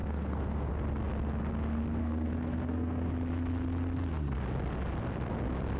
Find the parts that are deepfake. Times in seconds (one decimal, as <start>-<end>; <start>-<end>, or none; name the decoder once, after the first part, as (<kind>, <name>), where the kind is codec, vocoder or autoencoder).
0.0-0.7 (codec, SNAC); 2.0-3.1